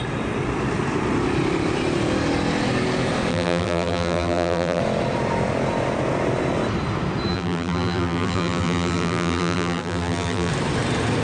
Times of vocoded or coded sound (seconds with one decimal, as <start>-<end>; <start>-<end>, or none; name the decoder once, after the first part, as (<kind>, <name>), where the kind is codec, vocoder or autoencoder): 3.3-4.8 (vocoder, BigVGAN v2); 7.3-10.5